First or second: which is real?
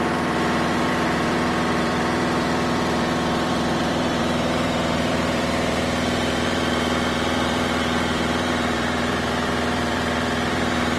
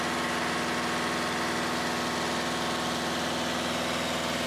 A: second